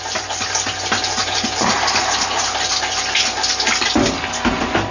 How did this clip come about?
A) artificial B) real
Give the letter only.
B